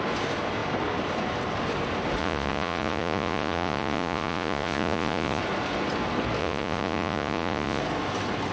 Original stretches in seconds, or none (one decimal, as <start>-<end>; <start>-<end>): 0.0-2.2; 5.4-6.4; 7.8-8.5